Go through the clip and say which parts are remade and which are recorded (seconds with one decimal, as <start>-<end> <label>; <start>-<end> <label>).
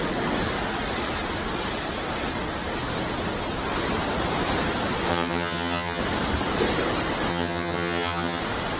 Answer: 0.0-5.1 recorded; 5.1-6.0 remade; 6.0-7.3 recorded; 7.3-8.4 remade; 8.4-8.8 recorded